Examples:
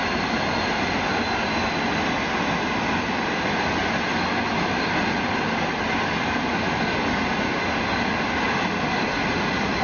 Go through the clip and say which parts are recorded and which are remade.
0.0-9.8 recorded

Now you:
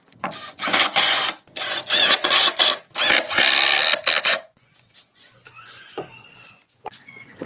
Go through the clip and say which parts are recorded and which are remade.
0.0-2.7 remade; 2.7-4.2 recorded; 4.2-7.5 remade

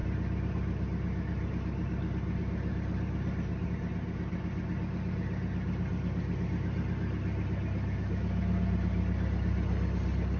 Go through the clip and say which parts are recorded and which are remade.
0.0-10.4 recorded